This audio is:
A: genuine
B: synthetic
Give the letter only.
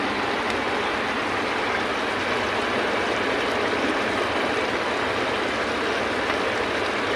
A